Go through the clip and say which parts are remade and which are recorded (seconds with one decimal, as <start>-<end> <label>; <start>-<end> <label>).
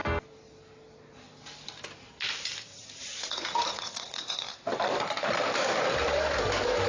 0.0-2.7 recorded; 2.7-4.3 remade; 4.3-6.9 recorded